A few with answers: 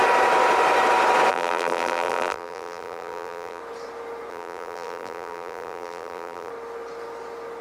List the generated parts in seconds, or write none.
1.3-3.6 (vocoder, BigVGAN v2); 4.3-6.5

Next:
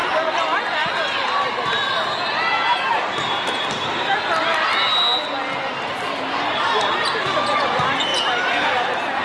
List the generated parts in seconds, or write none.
8.1-9.2 (vocoder, BigVGAN v2)